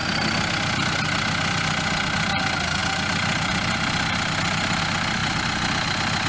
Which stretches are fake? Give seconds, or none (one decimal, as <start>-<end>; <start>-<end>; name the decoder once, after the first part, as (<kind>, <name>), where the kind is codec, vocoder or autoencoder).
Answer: none